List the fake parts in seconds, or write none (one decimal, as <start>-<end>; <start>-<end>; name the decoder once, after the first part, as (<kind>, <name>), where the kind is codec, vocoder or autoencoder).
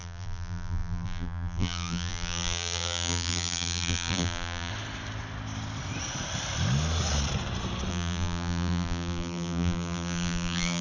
0.0-4.7 (vocoder, BigVGAN v2); 7.9-10.8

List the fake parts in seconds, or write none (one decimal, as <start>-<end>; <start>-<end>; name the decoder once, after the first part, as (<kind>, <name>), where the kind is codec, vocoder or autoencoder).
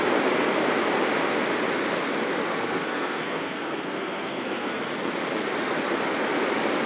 2.5-4.8 (codec, SNAC)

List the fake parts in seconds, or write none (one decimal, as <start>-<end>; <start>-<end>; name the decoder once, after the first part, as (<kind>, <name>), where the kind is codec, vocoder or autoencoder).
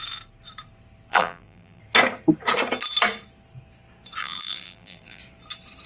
1.1-1.8 (vocoder, BigVGAN v2); 4.2-5.2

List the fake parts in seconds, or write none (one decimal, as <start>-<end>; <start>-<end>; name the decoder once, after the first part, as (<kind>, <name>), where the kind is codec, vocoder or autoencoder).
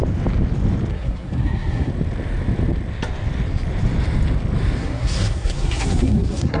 0.9-1.9 (codec, SNAC); 4.8-6.6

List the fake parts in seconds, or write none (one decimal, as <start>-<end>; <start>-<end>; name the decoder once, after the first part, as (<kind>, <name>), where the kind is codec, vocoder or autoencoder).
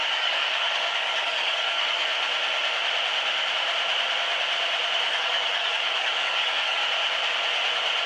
0.0-2.1 (codec, DAC); 5.1-6.8